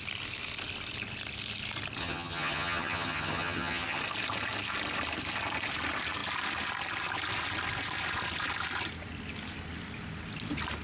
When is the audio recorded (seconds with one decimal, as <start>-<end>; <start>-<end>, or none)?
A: 0.0-2.0; 4.0-10.8